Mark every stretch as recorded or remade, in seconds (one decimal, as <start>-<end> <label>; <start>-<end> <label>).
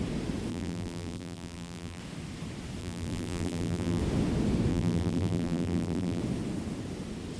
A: 0.0-0.5 recorded; 0.5-2.0 remade; 2.0-2.8 recorded; 2.8-4.0 remade; 4.0-4.7 recorded; 4.7-6.2 remade; 6.2-7.4 recorded